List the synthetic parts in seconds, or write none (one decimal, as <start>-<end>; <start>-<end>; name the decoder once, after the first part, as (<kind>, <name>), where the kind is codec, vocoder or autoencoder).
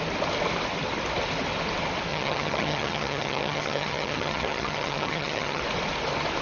2.1-5.6 (vocoder, HiFi-GAN)